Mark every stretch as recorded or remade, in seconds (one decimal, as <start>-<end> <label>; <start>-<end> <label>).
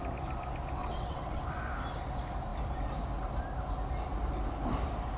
0.0-0.8 recorded; 0.8-1.4 remade; 1.4-5.2 recorded